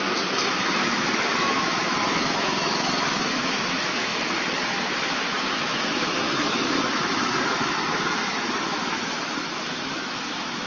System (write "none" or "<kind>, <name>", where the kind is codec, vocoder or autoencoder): autoencoder, DAC-VAE